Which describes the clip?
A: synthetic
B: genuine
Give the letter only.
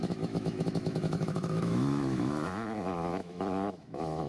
A